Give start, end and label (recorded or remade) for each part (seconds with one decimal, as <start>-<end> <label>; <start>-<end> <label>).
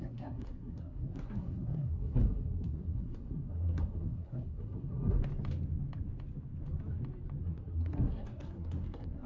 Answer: 0.0-5.2 remade; 5.2-7.4 recorded; 7.4-9.3 remade